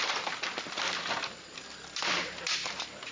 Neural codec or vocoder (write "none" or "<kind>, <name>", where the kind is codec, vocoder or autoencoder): none